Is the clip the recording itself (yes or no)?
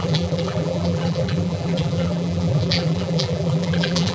no